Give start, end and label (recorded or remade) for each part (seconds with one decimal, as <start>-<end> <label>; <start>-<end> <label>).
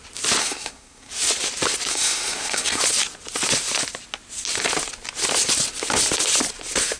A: 0.0-0.4 recorded; 0.4-1.1 remade; 1.1-1.9 recorded; 1.9-2.8 remade; 2.8-7.0 recorded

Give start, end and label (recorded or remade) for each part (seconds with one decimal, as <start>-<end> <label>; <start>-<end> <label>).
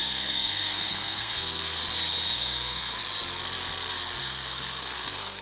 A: 0.0-1.8 remade; 1.8-2.3 recorded; 2.3-3.0 remade; 3.0-4.2 recorded; 4.2-5.4 remade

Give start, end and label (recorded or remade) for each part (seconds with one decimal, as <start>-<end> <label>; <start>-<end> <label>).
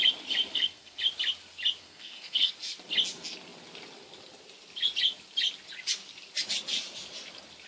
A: 0.0-0.5 recorded; 0.5-1.0 remade; 1.0-1.8 recorded; 1.8-2.5 remade; 2.5-7.7 recorded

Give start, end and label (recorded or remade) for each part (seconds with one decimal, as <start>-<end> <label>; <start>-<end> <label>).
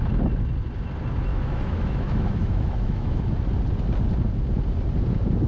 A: 0.0-1.3 recorded; 1.3-3.2 remade; 3.2-5.5 recorded